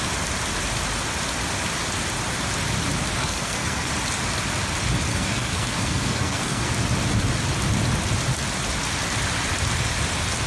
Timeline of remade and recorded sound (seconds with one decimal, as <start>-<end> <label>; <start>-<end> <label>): 0.0-3.2 recorded; 3.2-3.9 remade; 3.9-5.1 recorded; 5.1-6.7 remade; 6.7-10.5 recorded